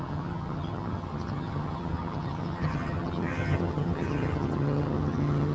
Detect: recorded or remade remade